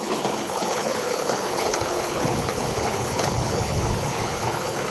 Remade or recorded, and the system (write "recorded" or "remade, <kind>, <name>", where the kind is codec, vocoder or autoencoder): remade, codec, HILCodec